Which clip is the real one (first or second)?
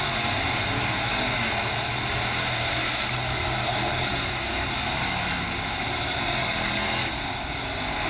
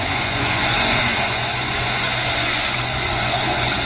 first